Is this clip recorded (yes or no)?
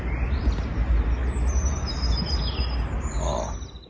yes